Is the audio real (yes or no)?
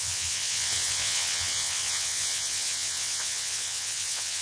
no